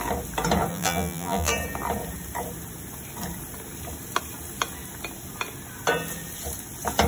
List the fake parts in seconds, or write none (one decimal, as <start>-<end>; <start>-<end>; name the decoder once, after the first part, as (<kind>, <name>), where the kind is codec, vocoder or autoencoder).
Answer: 0.7-1.5 (vocoder, BigVGAN v2)